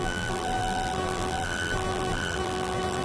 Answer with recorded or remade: remade